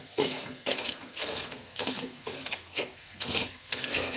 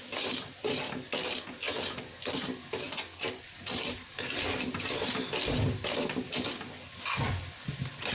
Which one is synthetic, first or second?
first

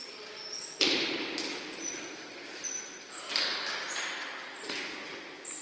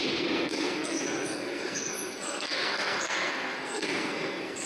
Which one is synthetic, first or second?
second